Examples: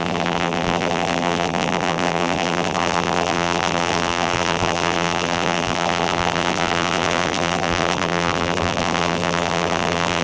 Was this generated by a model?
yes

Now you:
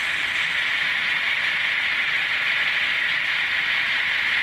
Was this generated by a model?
no